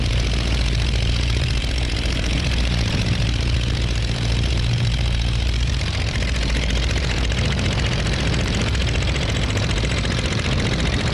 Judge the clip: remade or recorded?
remade